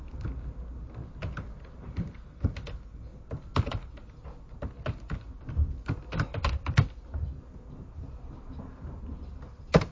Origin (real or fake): real